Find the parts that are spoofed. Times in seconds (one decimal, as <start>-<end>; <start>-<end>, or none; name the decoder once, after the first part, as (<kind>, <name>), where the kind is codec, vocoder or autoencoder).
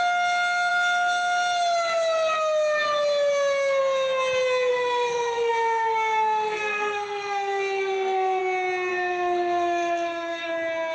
4.7-8.4 (codec, SNAC); 8.9-10.5